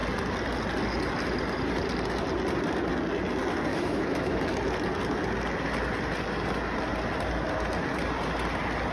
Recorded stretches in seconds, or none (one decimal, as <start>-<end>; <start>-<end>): 0.0-3.7; 4.4-8.9